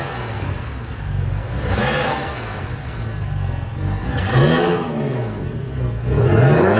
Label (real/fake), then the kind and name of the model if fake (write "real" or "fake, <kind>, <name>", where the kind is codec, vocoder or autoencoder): fake, codec, SNAC